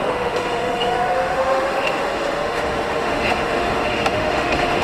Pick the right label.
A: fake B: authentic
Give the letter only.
A